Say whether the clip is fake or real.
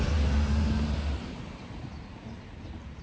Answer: fake